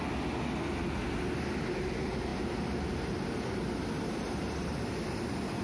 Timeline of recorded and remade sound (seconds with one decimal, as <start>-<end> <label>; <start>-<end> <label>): 0.0-5.6 recorded

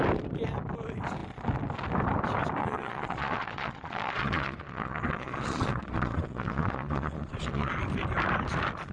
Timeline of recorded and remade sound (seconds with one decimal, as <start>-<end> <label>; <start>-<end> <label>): 0.0-2.6 recorded; 2.6-7.7 remade; 7.7-8.9 recorded

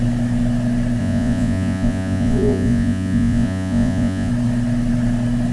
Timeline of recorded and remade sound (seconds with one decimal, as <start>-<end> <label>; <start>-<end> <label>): 0.0-1.0 recorded; 1.0-4.3 remade; 4.3-5.5 recorded

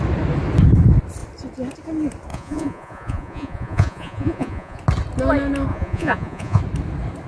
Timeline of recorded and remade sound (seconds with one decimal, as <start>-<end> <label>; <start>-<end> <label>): 0.0-2.3 recorded; 2.3-4.8 remade; 4.8-5.7 recorded; 5.7-6.6 remade; 6.6-7.3 recorded

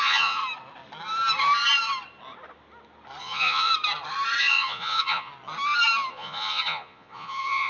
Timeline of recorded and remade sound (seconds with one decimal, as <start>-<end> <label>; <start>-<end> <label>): 0.0-0.4 remade; 0.4-3.2 recorded; 3.2-3.7 remade; 3.7-4.4 recorded; 4.4-5.3 remade; 5.3-6.1 recorded; 6.1-7.7 remade

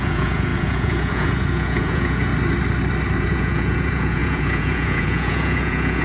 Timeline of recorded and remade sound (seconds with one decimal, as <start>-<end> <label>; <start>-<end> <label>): 0.0-2.3 remade; 2.3-3.2 recorded; 3.2-6.0 remade

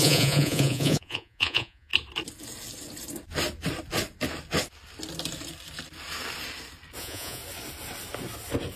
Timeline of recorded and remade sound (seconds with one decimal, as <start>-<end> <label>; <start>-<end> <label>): 0.0-1.9 remade; 1.9-7.0 recorded; 7.0-7.4 remade; 7.4-8.8 recorded

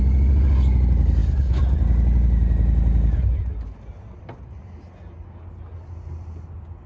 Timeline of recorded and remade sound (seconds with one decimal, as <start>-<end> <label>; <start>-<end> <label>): 0.0-6.9 recorded